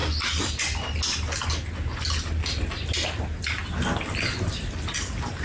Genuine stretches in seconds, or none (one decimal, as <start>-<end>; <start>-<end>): 0.5-5.4